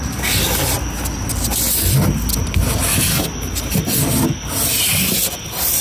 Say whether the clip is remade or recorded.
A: recorded